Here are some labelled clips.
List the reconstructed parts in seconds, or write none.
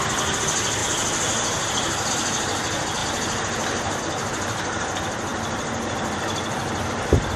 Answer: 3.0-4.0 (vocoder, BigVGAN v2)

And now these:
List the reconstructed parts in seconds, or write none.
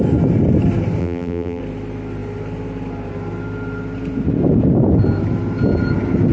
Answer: 1.0-1.6 (vocoder, BigVGAN v2)